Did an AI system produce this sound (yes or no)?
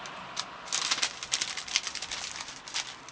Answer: no